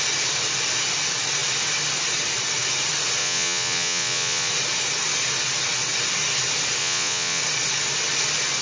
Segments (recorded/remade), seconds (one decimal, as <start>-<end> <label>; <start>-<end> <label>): 0.0-3.2 recorded; 3.2-4.5 remade; 4.5-6.8 recorded; 6.8-7.4 remade; 7.4-8.6 recorded